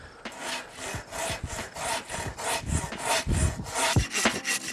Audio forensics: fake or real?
real